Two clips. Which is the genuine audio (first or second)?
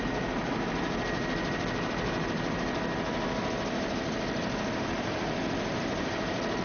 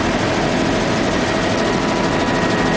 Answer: second